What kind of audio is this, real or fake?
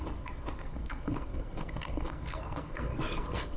fake